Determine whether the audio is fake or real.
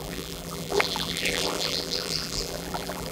fake